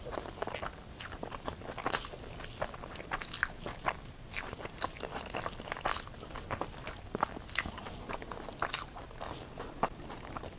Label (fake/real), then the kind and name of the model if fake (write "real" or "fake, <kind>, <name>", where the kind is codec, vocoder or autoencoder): real